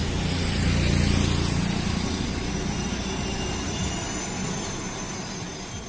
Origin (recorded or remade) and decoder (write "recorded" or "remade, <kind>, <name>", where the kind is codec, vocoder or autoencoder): recorded